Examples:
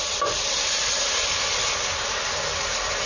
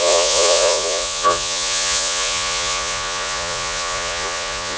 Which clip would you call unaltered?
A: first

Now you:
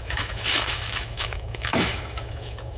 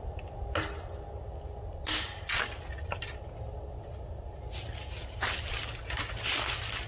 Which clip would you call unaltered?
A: second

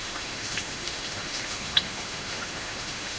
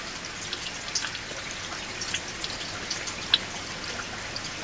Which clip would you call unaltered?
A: second